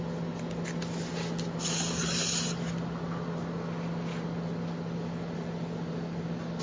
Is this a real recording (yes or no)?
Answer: yes